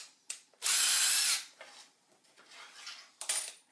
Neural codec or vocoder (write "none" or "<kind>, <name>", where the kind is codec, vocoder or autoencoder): none